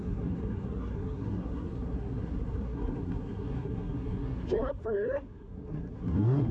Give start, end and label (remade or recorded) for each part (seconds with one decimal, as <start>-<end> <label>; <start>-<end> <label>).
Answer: 0.0-6.5 remade